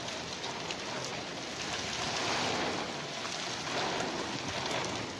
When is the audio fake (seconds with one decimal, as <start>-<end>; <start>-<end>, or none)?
none